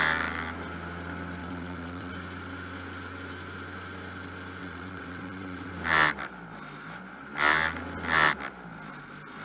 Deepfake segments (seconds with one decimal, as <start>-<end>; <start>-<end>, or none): 1.4-2.1; 4.6-5.7

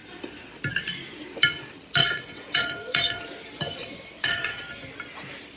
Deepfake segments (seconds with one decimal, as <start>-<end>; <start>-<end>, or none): 2.0-3.2; 3.8-4.6

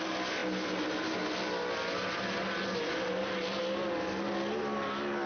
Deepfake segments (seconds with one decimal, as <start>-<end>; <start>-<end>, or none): none

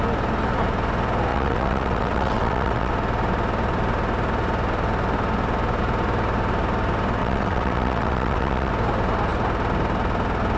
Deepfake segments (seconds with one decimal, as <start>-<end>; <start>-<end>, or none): 1.3-2.9; 7.2-8.7

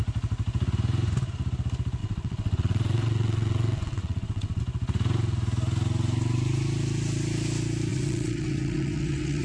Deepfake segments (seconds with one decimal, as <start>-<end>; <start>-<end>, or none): 2.0-4.6; 7.9-9.4

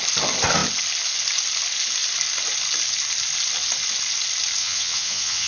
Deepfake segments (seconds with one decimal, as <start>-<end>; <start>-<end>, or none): 4.6-5.5

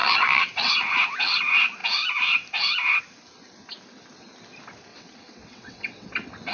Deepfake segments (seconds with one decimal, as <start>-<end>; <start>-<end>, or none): 0.0-1.4; 4.9-6.1